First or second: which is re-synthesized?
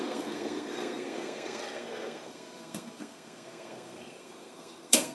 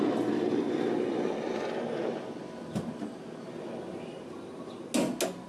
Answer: first